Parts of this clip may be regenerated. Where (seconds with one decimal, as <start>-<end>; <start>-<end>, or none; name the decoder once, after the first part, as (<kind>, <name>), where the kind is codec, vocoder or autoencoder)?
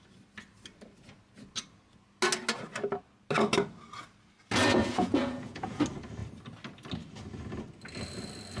4.8-5.8 (vocoder, Vocos)